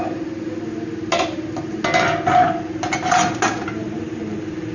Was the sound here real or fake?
real